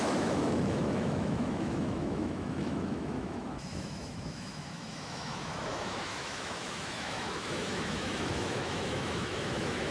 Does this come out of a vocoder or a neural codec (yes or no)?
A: yes